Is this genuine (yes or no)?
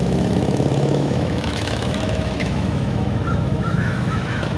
no